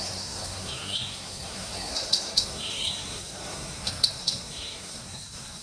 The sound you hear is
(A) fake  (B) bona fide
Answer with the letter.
A